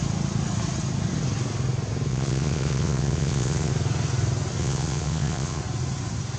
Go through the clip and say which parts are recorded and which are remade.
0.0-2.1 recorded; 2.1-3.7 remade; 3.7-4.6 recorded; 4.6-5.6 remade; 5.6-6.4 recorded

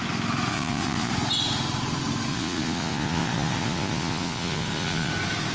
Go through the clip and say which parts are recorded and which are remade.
0.0-0.5 recorded; 0.5-1.1 remade; 1.1-2.3 recorded; 2.3-5.1 remade; 5.1-5.5 recorded

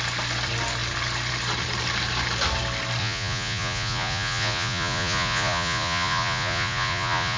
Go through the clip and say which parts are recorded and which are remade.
0.0-3.0 recorded; 3.0-7.4 remade

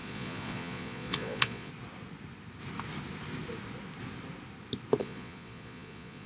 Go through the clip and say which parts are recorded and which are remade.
0.0-1.7 remade; 1.7-5.0 recorded; 5.0-6.3 remade

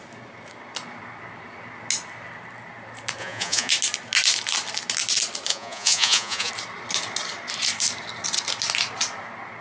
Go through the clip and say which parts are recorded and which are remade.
0.0-3.2 recorded; 3.2-3.7 remade; 3.7-5.5 recorded; 5.5-6.5 remade; 6.5-9.6 recorded

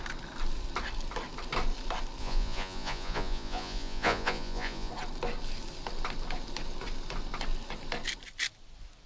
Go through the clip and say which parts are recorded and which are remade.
0.0-2.2 recorded; 2.2-4.9 remade; 4.9-9.1 recorded